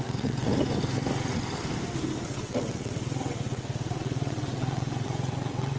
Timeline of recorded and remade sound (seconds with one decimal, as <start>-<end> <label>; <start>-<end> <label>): 0.0-0.5 remade; 0.5-2.4 recorded; 2.4-5.8 remade